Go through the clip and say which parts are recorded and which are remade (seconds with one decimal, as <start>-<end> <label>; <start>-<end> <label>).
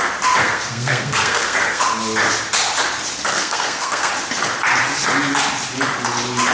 0.0-0.4 recorded; 0.4-1.8 remade; 1.8-3.3 recorded; 3.3-4.1 remade; 4.1-6.5 recorded